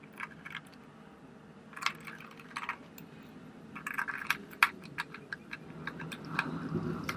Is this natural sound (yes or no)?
yes